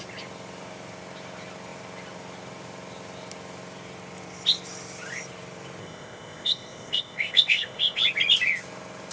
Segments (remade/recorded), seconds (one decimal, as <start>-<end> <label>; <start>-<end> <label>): 0.0-5.8 recorded; 5.8-8.0 remade; 8.0-9.1 recorded